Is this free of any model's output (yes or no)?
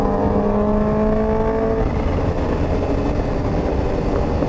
yes